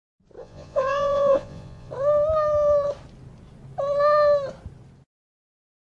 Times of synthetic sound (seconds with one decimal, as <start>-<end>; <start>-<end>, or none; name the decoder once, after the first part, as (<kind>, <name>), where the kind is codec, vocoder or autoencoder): 0.4-1.9 (vocoder, Vocos)